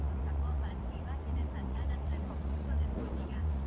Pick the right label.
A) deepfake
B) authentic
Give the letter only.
A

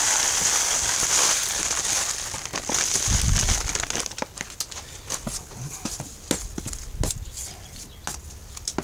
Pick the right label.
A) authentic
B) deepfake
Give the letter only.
A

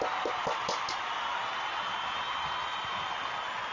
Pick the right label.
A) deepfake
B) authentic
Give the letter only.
B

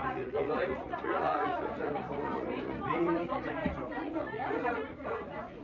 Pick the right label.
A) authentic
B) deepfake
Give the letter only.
B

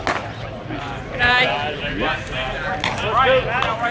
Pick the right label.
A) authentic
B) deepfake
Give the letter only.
A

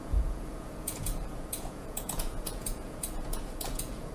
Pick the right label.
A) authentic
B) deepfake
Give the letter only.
B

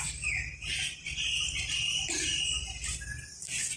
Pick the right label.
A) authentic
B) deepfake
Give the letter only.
A